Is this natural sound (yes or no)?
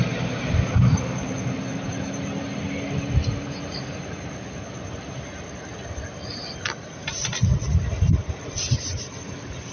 yes